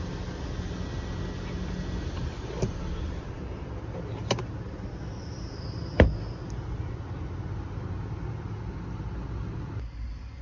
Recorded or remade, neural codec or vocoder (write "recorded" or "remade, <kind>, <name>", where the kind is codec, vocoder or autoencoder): recorded